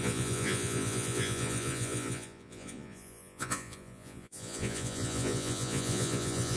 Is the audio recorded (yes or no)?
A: no